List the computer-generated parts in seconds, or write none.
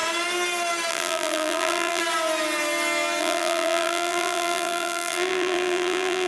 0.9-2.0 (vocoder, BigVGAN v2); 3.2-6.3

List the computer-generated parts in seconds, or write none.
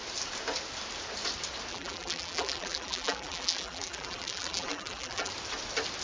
1.7-5.3 (vocoder, BigVGAN v2)